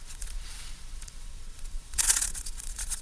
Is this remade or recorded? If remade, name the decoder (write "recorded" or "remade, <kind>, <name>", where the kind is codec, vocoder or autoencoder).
remade, vocoder, Vocos